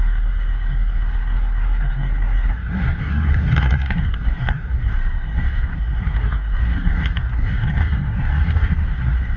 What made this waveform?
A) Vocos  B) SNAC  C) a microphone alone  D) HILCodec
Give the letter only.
B